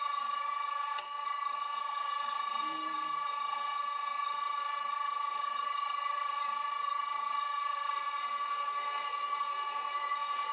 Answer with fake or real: fake